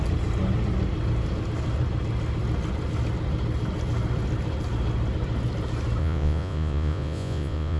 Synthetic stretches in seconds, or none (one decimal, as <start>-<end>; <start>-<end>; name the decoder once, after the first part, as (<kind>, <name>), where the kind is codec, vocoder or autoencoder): 6.0-7.8 (vocoder, Vocos)

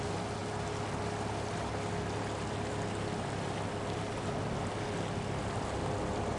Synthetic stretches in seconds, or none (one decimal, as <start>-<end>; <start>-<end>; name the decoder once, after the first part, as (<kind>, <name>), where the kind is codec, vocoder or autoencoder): none

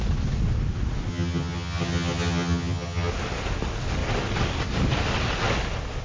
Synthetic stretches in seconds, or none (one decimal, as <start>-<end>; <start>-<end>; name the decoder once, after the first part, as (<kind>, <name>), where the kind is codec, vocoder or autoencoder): 1.1-3.1 (vocoder, HiFi-GAN)

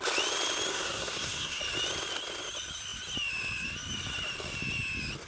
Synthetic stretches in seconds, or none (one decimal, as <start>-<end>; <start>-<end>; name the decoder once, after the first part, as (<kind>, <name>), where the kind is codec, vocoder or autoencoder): 0.7-1.6 (codec, SNAC)

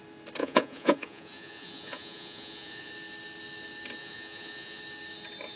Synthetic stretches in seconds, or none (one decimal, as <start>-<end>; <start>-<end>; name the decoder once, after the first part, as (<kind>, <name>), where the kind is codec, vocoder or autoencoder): 0.4-2.9 (vocoder, Vocos); 4.0-4.8

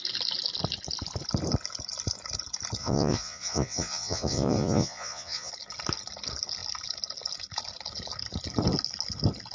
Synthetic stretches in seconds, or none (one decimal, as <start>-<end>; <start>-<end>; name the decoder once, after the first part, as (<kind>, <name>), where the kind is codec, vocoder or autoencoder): 2.8-5.5 (vocoder, Vocos)

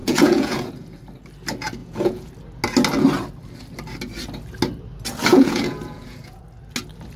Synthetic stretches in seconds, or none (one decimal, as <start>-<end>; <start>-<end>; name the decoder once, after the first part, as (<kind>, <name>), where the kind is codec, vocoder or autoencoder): 0.0-1.0 (vocoder, Vocos); 1.8-2.3; 5.3-6.4

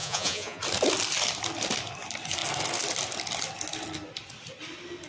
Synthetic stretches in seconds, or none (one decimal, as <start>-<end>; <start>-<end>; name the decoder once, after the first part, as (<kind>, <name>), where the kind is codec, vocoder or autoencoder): 0.0-0.6 (vocoder, Vocos)